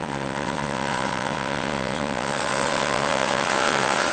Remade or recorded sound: remade